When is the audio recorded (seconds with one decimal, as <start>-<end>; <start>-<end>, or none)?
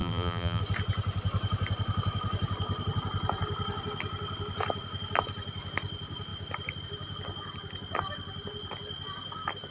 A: 0.6-9.7